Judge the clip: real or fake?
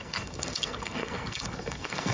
fake